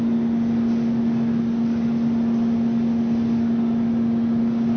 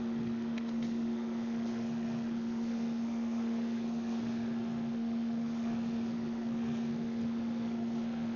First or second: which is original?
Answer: first